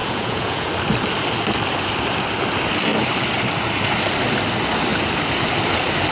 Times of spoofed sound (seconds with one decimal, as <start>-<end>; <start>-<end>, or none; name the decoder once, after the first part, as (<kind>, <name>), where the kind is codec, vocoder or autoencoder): 0.0-0.7 (vocoder, Vocos)